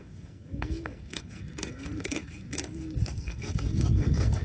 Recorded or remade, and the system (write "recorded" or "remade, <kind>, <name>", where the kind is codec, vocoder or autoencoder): remade, codec, SNAC